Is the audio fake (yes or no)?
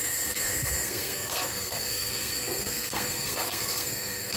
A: yes